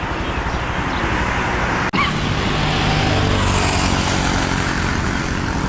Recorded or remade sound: recorded